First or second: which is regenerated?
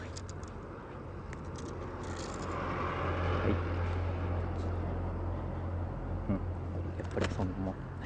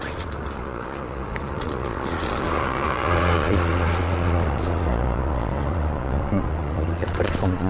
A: second